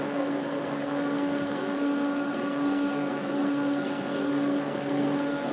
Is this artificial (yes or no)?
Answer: yes